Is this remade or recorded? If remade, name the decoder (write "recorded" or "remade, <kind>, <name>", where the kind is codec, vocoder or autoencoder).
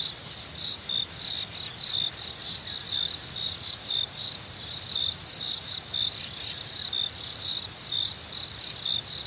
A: recorded